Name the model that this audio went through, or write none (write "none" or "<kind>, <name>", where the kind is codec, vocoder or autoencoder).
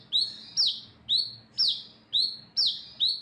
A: none